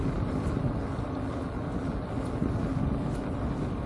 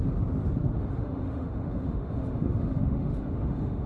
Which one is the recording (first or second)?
first